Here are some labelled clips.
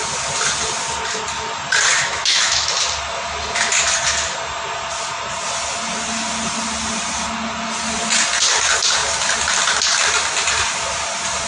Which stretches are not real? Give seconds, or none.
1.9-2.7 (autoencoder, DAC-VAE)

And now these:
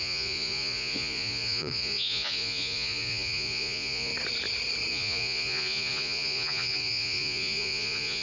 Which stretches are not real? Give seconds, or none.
0.0-4.1 (vocoder, Vocos); 4.9-8.2

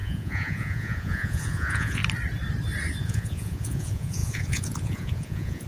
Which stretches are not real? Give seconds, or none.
0.0-2.0 (vocoder, Vocos); 3.0-5.7

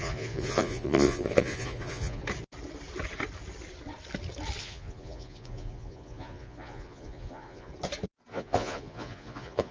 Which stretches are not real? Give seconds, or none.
0.0-2.2 (vocoder, Vocos); 4.6-7.7; 8.3-9.7

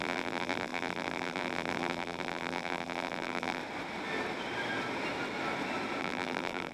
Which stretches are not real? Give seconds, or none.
0.0-3.6 (vocoder, BigVGAN v2); 6.0-6.7

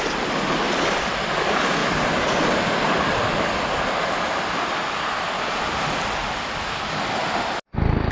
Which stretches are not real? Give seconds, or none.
none